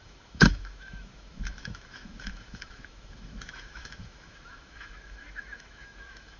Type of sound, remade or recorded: remade